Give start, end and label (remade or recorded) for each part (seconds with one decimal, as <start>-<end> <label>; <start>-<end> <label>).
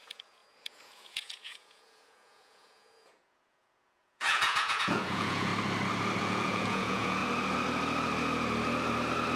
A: 0.0-5.5 remade; 5.5-6.2 recorded; 6.2-7.2 remade; 7.2-9.4 recorded